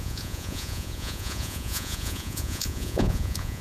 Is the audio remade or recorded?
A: remade